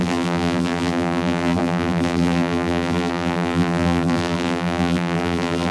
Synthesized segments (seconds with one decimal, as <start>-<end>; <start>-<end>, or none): 0.0-5.7